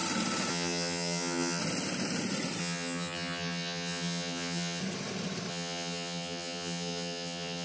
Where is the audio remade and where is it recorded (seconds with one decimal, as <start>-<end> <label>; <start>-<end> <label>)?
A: 0.0-0.5 recorded; 0.5-1.6 remade; 1.6-2.6 recorded; 2.6-4.8 remade; 4.8-5.5 recorded; 5.5-7.6 remade